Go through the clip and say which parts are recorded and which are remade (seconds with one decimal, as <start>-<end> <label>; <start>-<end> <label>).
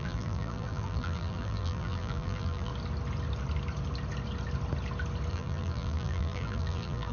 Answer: 0.0-2.7 remade; 2.7-5.3 recorded; 5.3-7.1 remade